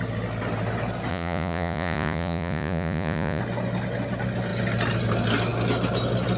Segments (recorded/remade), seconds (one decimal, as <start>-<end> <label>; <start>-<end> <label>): 0.0-1.1 recorded; 1.1-3.4 remade; 3.4-6.4 recorded

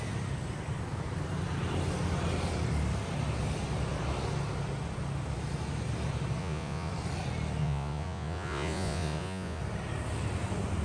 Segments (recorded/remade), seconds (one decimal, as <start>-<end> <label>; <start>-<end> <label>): 0.0-6.4 recorded; 6.4-6.9 remade; 6.9-7.6 recorded; 7.6-9.6 remade; 9.6-10.8 recorded

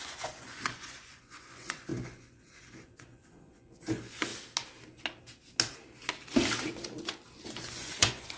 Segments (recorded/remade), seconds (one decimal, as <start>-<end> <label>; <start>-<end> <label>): 0.0-4.3 remade; 4.3-7.4 recorded; 7.4-8.4 remade

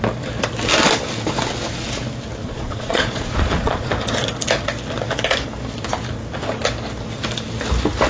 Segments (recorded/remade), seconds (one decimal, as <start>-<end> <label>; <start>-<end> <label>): 0.0-2.4 recorded; 2.4-3.9 remade; 3.9-8.1 recorded

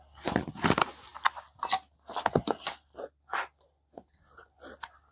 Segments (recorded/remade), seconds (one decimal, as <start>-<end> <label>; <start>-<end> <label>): 0.0-5.1 recorded

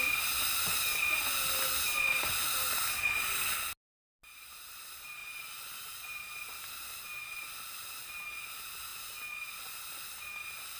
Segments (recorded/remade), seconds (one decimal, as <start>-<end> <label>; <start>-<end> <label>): 0.0-10.8 recorded

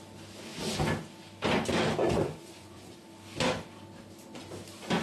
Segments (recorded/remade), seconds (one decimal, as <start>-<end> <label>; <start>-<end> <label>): 0.0-2.0 recorded; 2.0-3.0 remade; 3.0-5.0 recorded